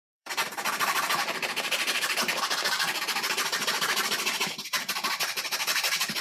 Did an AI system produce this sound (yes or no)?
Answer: yes